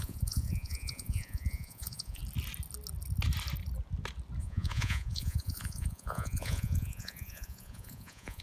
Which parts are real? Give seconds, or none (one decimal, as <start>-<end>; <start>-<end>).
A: 2.2-4.4